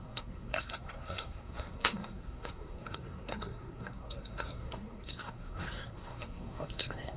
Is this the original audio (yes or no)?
no